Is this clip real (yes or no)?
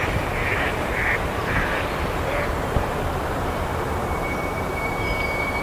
no